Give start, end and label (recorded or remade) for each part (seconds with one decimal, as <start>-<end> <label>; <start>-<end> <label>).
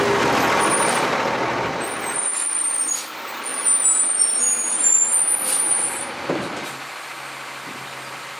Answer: 0.0-3.5 recorded; 3.5-6.3 remade; 6.3-8.4 recorded